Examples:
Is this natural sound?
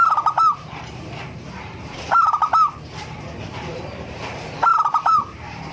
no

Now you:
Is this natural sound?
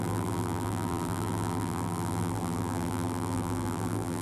no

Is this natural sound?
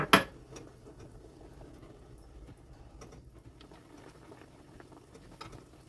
yes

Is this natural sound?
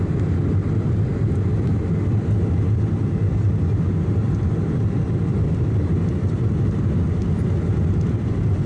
no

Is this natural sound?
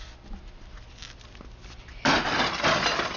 yes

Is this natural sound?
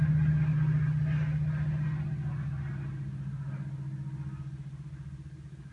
yes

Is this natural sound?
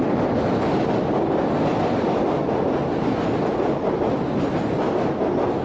yes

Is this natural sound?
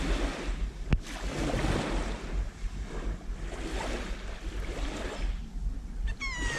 yes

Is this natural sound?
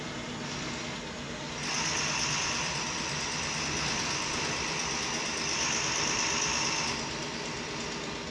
no